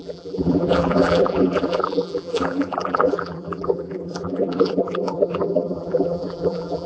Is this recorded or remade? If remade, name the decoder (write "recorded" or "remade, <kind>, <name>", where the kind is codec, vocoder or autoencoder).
remade, vocoder, BigVGAN v2